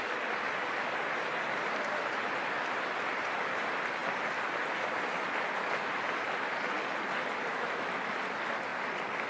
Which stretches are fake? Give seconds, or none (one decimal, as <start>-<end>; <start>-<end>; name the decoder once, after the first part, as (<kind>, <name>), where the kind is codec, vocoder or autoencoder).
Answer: 7.5-8.2 (autoencoder, DAC-VAE)

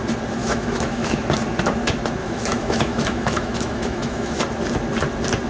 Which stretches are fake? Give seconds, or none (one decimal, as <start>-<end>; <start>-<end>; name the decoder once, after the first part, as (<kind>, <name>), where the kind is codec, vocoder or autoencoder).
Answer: 0.4-1.2 (autoencoder, DAC-VAE); 2.2-4.4

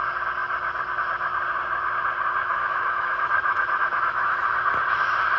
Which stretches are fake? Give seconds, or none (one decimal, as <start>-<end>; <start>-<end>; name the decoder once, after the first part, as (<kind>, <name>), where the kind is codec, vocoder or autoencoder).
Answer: 2.4-4.4 (autoencoder, DAC-VAE)